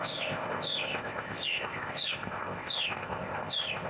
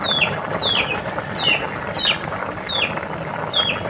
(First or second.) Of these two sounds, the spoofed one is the first